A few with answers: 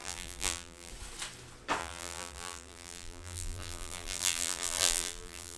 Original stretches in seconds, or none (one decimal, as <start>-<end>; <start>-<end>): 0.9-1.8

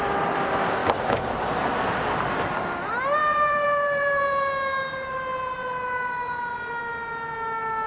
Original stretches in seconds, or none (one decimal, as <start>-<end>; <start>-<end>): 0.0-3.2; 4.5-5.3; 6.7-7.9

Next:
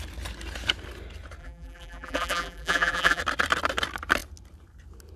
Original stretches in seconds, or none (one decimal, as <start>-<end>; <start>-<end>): 0.0-1.4; 3.2-5.2

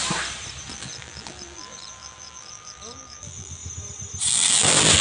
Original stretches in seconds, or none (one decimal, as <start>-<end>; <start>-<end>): 0.0-0.7; 3.6-4.3

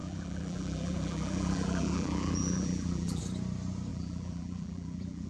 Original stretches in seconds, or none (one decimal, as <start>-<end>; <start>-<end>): 3.2-3.9